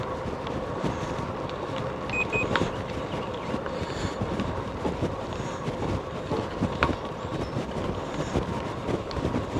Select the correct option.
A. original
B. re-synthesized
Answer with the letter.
A